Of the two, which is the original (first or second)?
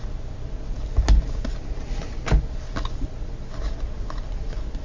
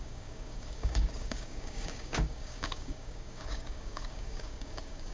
first